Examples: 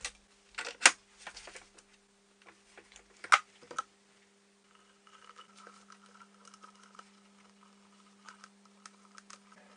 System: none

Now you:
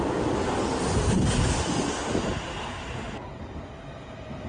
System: none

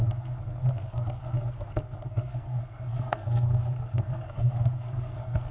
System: codec, SNAC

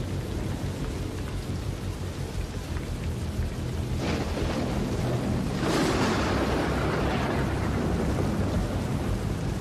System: none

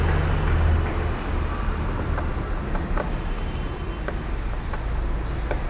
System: none